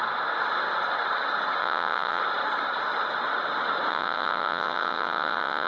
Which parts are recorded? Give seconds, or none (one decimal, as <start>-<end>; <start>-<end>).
0.0-1.6; 2.2-3.9

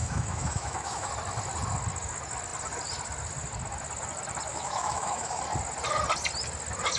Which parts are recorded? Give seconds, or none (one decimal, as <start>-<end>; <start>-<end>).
1.1-4.5; 5.4-7.0

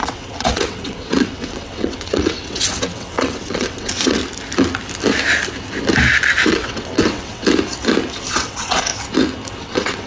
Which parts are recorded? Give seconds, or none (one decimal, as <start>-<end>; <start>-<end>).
4.2-6.4; 7.4-8.3; 8.9-9.6